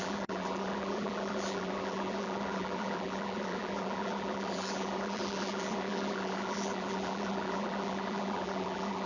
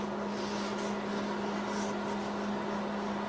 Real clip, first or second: second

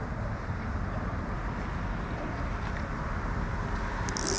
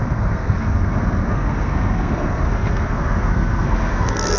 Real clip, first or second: first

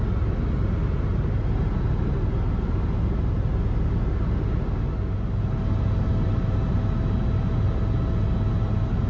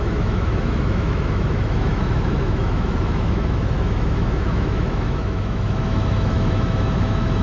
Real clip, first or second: first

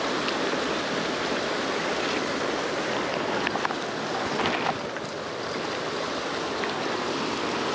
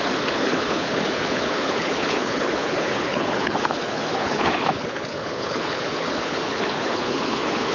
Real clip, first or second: first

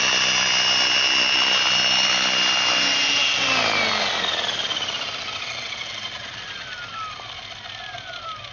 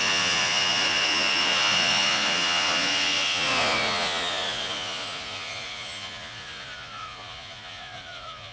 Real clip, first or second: first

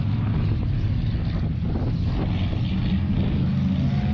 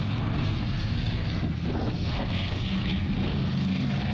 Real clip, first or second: first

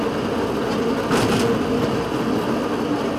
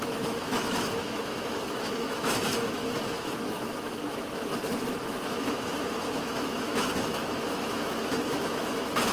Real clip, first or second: first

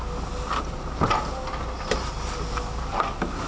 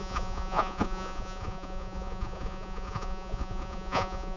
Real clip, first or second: first